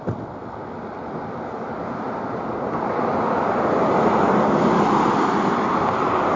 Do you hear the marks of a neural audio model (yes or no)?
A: no